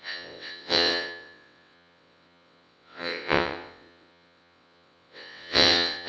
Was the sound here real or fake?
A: fake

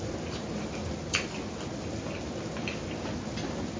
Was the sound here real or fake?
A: real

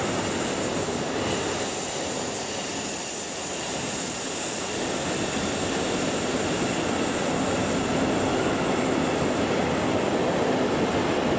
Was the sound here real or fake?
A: real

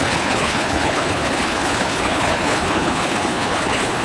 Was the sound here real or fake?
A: fake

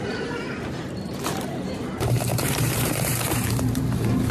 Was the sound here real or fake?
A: fake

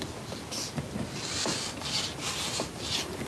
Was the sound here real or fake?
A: real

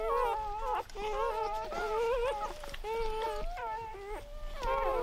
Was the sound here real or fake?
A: real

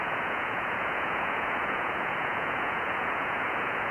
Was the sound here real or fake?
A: fake